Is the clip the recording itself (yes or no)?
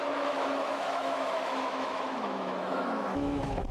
no